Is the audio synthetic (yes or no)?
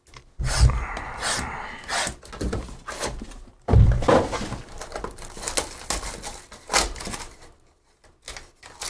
no